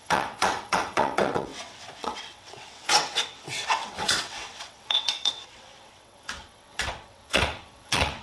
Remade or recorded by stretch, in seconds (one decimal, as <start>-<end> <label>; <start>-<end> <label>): 0.0-8.2 remade